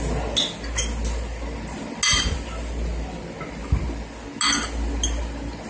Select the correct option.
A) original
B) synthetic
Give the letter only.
A